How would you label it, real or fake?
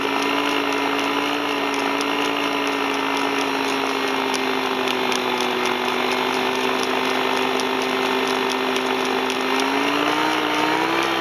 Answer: real